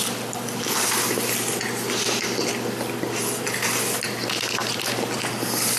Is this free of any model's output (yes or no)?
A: yes